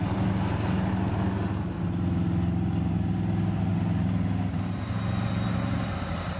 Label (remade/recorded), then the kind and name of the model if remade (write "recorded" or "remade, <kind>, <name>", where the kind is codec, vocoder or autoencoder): recorded